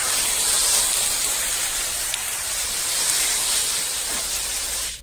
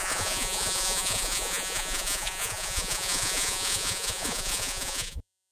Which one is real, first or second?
first